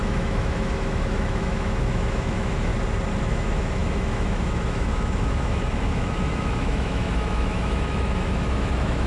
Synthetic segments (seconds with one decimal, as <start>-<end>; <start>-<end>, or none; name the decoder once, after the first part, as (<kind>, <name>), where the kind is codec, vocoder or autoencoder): 0.0-2.7 (autoencoder, DAC-VAE); 3.2-9.1